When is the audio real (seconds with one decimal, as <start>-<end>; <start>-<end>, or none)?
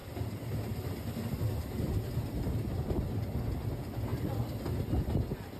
0.0-4.1; 4.8-5.6